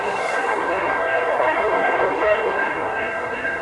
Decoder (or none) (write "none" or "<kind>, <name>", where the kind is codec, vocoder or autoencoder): codec, SNAC